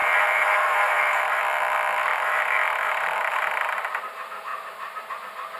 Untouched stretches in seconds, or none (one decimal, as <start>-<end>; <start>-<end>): 1.4-2.1; 4.0-4.5; 5.1-5.6